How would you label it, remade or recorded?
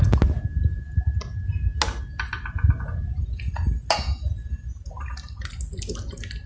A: recorded